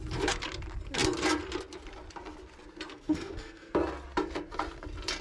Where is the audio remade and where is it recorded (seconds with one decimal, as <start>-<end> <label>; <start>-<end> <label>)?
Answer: 0.0-2.9 recorded; 2.9-3.7 remade; 3.7-5.2 recorded